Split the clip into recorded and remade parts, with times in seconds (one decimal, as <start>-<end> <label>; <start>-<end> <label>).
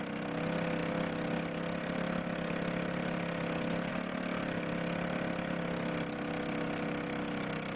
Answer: 0.0-7.8 recorded